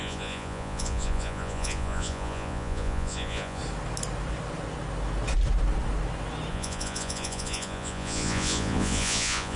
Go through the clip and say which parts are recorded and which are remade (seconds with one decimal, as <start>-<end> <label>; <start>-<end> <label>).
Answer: 0.0-3.6 remade; 3.6-6.5 recorded; 6.5-9.6 remade

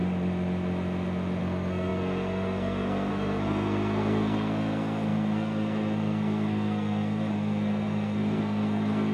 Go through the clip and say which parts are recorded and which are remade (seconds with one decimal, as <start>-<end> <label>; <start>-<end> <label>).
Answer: 0.0-1.4 recorded; 1.4-9.1 remade

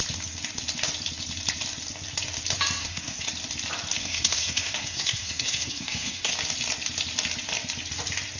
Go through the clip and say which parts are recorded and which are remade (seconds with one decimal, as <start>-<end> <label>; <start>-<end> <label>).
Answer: 0.0-2.8 recorded; 2.8-3.3 remade; 3.3-4.0 recorded; 4.0-6.3 remade; 6.3-8.4 recorded